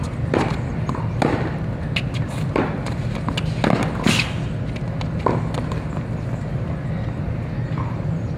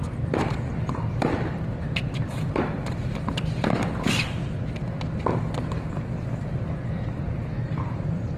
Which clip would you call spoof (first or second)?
second